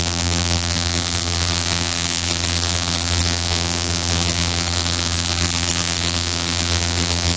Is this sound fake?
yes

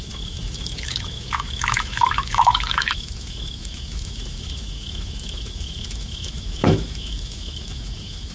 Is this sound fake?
yes